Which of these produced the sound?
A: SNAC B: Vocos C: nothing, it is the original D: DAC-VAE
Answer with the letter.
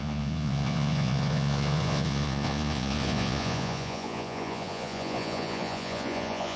B